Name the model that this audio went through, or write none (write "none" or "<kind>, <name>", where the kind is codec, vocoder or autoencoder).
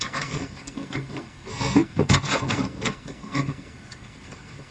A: codec, SNAC